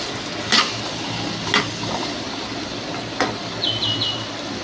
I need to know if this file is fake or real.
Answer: real